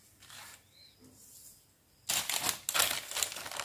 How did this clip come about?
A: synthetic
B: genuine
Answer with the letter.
B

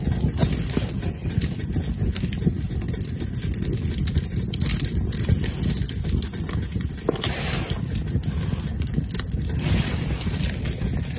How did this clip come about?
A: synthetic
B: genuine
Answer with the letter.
B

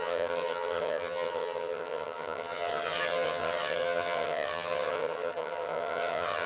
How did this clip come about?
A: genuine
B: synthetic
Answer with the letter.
B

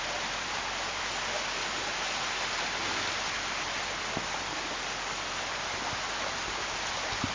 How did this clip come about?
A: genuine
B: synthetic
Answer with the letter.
A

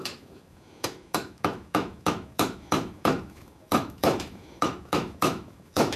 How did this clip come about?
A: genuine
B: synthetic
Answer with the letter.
B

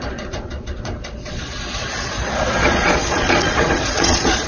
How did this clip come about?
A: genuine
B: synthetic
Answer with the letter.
B